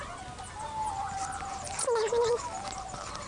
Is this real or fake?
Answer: real